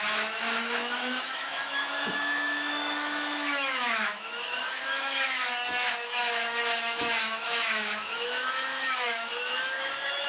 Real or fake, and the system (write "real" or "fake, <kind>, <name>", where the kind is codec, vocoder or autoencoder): fake, autoencoder, DAC-VAE